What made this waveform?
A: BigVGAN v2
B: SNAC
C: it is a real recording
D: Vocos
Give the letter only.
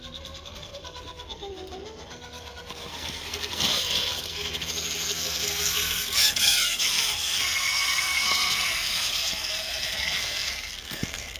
B